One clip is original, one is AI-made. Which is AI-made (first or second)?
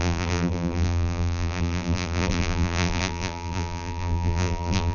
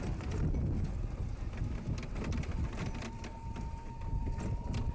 first